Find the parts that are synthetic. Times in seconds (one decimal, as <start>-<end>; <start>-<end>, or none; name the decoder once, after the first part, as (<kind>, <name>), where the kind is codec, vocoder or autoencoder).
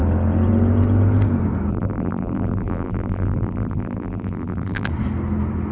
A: 1.7-4.9 (vocoder, BigVGAN v2)